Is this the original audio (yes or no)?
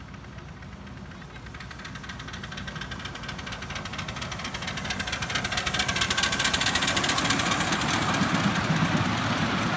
yes